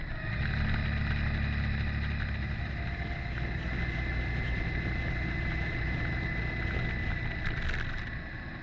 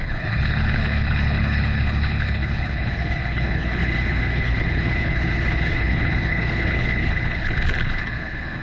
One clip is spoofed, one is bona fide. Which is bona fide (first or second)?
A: first